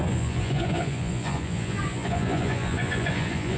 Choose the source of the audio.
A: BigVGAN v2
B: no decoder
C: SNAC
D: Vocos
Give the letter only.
D